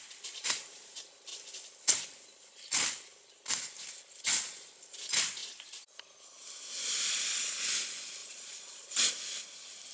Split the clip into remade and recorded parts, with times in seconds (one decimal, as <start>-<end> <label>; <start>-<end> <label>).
0.0-8.2 recorded; 8.2-9.1 remade; 9.1-9.9 recorded